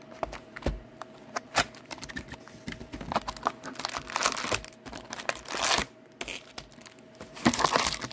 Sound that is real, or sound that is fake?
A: real